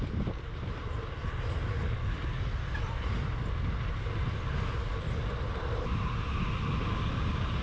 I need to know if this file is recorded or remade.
recorded